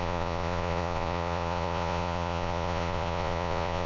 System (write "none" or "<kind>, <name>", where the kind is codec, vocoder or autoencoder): vocoder, Vocos